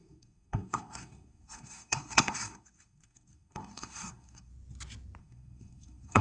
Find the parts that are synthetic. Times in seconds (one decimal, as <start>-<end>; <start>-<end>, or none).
0.0-4.5; 5.2-6.2